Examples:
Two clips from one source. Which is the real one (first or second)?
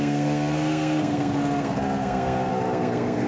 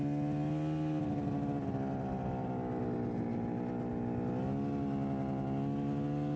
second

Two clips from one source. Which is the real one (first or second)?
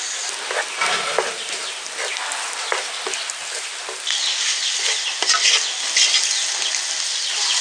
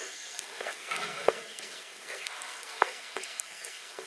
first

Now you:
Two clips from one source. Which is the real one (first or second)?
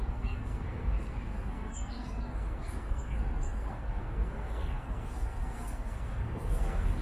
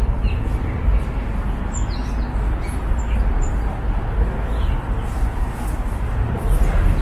second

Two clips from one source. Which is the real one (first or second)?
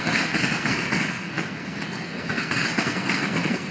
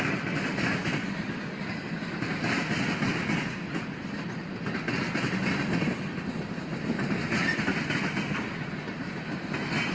second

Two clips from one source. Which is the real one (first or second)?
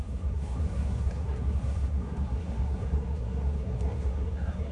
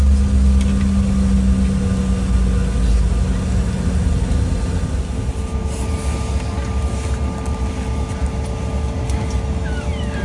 second